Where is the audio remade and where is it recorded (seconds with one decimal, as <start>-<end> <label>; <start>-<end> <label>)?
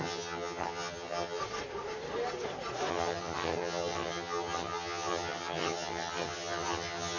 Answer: 0.0-1.4 remade; 1.4-2.9 recorded; 2.9-7.2 remade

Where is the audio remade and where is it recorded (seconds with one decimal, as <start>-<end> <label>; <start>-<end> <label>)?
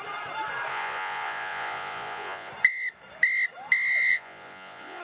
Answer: 0.0-0.7 recorded; 0.7-2.5 remade; 2.5-4.1 recorded; 4.1-5.0 remade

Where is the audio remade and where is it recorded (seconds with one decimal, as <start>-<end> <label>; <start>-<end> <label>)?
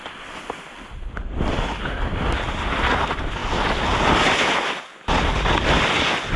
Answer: 0.0-2.4 remade; 2.4-6.4 recorded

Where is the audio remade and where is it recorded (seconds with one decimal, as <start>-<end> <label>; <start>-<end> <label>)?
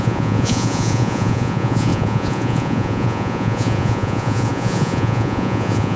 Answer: 0.0-6.0 remade